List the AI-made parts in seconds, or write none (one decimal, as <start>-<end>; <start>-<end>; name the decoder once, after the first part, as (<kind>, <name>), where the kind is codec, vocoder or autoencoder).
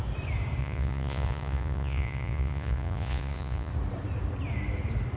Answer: 0.6-3.7 (vocoder, Vocos)